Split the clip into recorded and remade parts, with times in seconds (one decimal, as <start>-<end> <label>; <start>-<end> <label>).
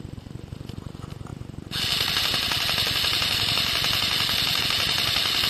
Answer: 0.0-5.5 recorded